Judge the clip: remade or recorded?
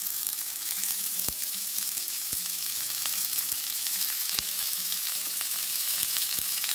remade